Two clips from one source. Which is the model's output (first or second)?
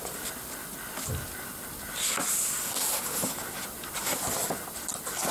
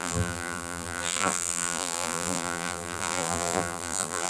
second